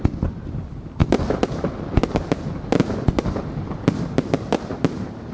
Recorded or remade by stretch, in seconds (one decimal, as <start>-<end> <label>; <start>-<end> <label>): 0.0-5.3 recorded